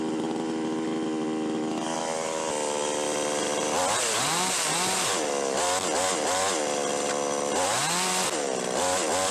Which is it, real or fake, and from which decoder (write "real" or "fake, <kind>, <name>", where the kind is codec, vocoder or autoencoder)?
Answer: real